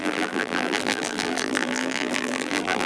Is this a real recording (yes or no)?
no